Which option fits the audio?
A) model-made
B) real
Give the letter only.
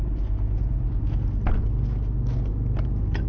B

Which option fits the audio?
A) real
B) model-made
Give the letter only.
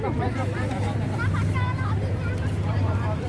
B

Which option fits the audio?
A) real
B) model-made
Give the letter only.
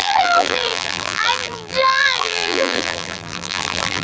B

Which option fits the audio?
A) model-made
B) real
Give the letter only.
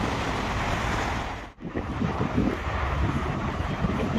A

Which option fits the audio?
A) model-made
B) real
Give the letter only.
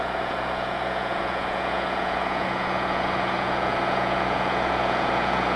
A